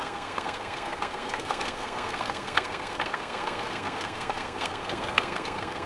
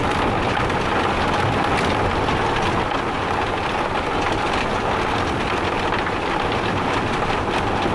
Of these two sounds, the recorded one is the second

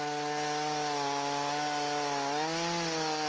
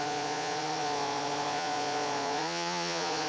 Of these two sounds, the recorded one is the first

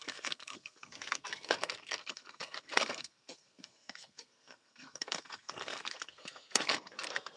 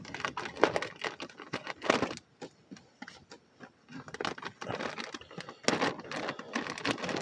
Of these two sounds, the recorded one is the second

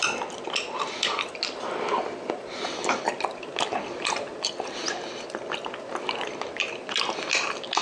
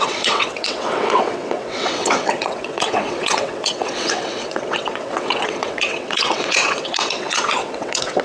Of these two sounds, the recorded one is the first